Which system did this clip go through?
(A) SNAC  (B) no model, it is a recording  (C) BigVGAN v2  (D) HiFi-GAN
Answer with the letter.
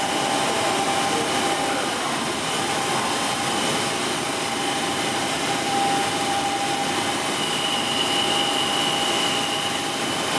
B